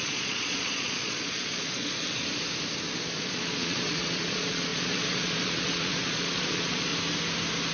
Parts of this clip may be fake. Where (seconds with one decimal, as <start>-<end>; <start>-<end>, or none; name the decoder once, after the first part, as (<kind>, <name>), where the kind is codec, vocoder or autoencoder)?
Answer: 0.0-2.2 (vocoder, Vocos); 3.2-6.9